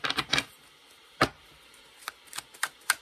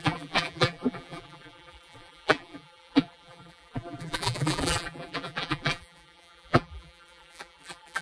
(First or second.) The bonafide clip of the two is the first